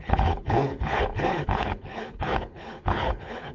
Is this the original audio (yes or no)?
no